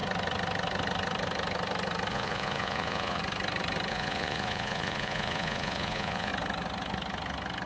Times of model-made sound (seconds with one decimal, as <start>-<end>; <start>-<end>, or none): 2.1-3.2; 3.9-6.3